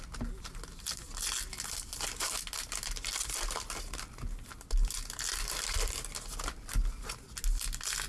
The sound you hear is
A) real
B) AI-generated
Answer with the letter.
A